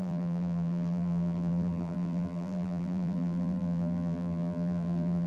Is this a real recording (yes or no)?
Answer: no